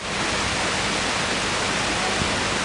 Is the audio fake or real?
real